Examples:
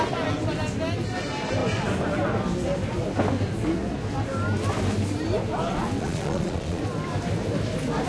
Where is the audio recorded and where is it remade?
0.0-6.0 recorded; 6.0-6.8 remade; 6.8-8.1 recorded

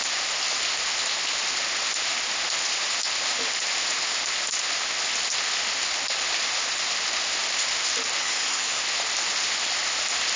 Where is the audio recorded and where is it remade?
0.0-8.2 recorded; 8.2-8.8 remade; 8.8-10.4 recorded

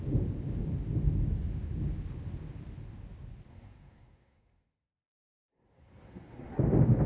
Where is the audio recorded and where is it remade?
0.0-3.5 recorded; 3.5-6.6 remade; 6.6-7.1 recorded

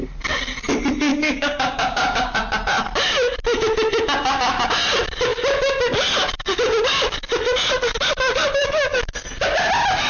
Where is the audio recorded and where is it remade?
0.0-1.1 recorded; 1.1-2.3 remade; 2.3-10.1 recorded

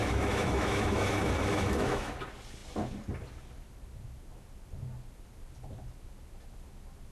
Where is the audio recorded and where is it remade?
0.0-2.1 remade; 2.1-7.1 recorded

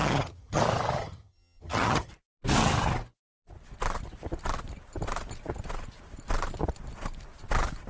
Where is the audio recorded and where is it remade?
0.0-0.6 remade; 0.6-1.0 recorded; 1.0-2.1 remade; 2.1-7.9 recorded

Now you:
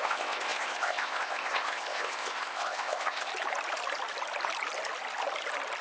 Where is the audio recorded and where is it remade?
0.0-3.3 remade; 3.3-5.8 recorded